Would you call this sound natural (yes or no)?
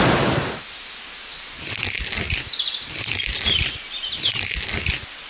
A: yes